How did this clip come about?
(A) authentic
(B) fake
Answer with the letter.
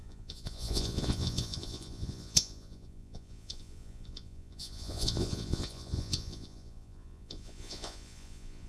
B